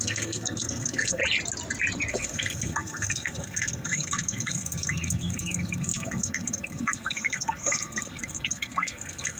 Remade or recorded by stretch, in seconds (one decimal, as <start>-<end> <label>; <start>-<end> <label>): 0.0-1.2 remade; 1.2-2.1 recorded; 2.1-9.4 remade